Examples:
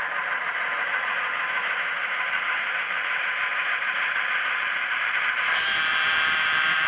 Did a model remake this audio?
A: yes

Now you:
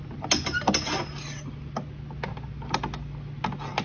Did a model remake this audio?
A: no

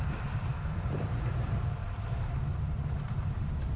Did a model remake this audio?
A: yes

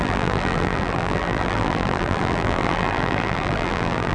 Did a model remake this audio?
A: yes